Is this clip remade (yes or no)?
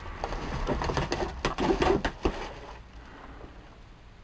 no